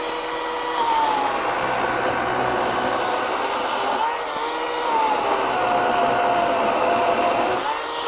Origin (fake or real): real